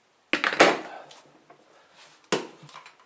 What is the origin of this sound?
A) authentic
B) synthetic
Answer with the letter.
A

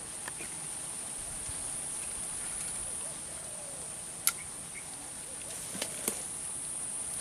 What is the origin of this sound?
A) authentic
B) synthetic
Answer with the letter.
A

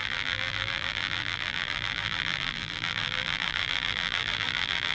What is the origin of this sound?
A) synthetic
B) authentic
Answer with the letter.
A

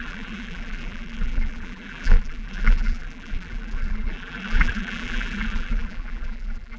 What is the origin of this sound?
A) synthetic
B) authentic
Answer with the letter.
A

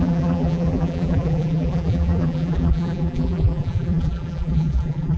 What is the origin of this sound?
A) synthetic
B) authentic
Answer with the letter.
A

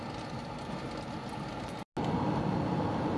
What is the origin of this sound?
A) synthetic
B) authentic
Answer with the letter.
B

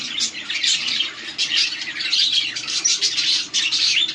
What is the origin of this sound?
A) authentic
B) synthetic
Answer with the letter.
B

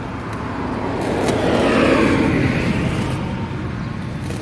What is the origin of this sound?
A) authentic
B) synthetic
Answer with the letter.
A